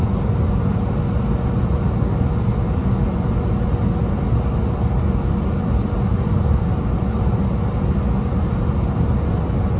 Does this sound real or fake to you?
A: real